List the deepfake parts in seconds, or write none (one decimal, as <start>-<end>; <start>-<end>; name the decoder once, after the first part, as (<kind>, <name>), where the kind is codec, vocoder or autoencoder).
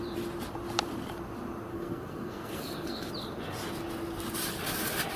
1.7-3.1 (codec, SNAC)